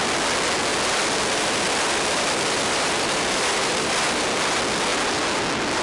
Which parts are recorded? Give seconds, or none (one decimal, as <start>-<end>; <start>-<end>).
0.0-0.7; 4.2-5.8